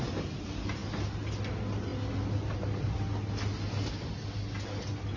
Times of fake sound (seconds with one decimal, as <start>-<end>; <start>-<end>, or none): none